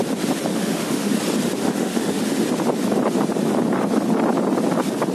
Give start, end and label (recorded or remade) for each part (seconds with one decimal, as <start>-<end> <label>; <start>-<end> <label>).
0.0-0.5 recorded; 0.5-1.1 remade; 1.1-1.6 recorded; 1.6-2.2 remade; 2.2-5.1 recorded